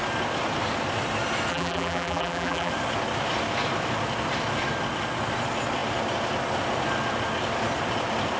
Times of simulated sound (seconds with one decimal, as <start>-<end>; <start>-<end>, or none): 1.5-2.7